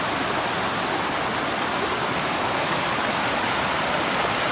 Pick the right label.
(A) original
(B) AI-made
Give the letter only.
A